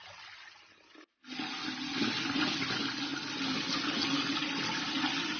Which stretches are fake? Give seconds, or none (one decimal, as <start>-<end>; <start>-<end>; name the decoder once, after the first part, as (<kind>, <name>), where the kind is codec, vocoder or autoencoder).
none